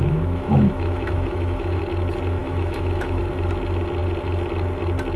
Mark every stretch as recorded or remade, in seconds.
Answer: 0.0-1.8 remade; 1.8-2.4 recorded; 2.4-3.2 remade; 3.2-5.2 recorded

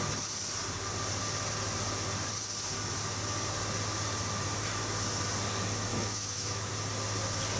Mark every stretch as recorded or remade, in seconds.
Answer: 0.0-5.9 recorded; 5.9-6.7 remade; 6.7-7.6 recorded

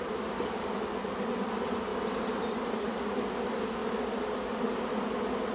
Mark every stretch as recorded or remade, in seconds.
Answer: 0.0-5.5 recorded

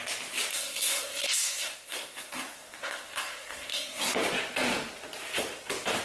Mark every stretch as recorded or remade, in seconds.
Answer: 0.0-0.5 recorded; 0.5-4.1 remade; 4.1-6.0 recorded

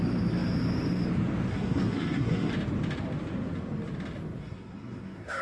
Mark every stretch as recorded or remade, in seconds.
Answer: 0.0-1.5 recorded; 1.5-2.5 remade; 2.5-4.4 recorded; 4.4-5.4 remade

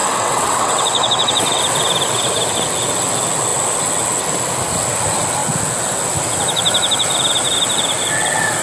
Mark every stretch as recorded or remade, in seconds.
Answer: 0.0-1.6 remade; 1.6-8.6 recorded

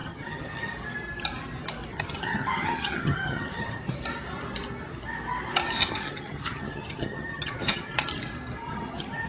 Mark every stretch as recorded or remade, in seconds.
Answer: 0.0-0.6 remade; 0.6-1.9 recorded; 1.9-3.8 remade; 3.8-5.8 recorded; 5.8-7.9 remade; 7.9-8.6 recorded; 8.6-9.3 remade

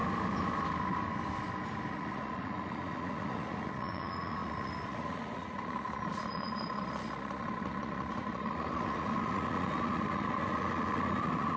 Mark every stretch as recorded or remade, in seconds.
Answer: 0.0-1.9 recorded; 1.9-11.6 remade